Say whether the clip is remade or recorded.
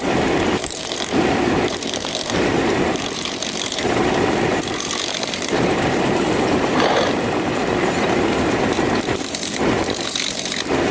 remade